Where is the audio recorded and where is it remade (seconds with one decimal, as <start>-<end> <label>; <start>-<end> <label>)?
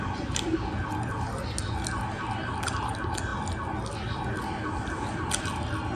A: 0.0-6.0 recorded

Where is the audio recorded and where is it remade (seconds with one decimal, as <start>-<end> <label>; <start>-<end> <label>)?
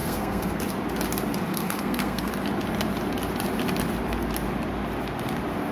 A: 0.0-0.6 remade; 0.6-1.5 recorded; 1.5-2.3 remade; 2.3-5.7 recorded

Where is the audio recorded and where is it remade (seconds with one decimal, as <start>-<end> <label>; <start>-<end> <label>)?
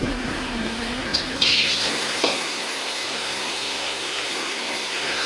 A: 0.0-5.3 remade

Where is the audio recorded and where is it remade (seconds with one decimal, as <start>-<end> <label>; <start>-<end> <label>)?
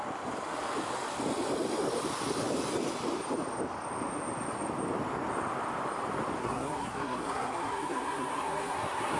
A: 0.0-6.4 recorded; 6.4-9.2 remade